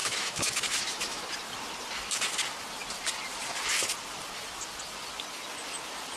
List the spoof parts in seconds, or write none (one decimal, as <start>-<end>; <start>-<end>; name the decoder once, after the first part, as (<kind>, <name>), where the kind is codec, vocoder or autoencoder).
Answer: 0.0-1.2 (autoencoder, DAC-VAE)

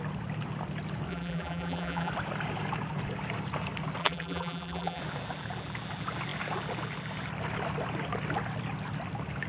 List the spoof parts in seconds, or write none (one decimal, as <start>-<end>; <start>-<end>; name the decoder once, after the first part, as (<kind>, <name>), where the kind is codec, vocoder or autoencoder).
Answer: 1.1-2.1 (vocoder, BigVGAN v2); 4.0-5.0

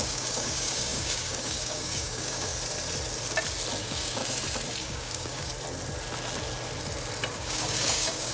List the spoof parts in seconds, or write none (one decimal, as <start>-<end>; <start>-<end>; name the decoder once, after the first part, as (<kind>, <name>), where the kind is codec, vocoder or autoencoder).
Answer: 0.0-2.5 (codec, DAC); 3.8-4.2; 4.8-5.5; 7.3-8.3

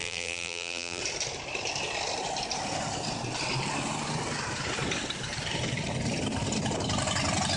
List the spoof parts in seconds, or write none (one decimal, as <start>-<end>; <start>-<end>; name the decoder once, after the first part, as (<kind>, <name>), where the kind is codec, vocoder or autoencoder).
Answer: 0.0-1.0 (vocoder, BigVGAN v2)

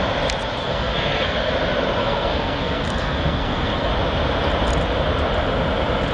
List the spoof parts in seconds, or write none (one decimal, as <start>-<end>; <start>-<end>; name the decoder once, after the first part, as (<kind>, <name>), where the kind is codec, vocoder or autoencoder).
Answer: 0.6-1.5 (codec, SNAC); 2.0-3.9